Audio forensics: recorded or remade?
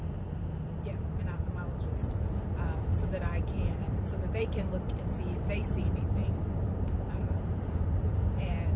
remade